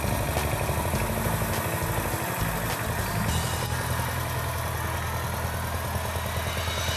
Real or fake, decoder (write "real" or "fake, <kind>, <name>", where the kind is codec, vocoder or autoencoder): real